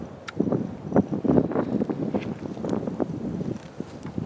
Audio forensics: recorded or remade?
recorded